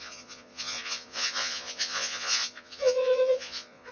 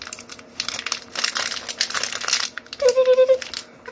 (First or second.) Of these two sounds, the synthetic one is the first